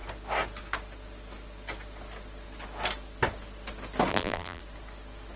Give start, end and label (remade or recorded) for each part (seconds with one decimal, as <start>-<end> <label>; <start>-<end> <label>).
0.0-4.1 recorded; 4.1-4.6 remade; 4.6-5.4 recorded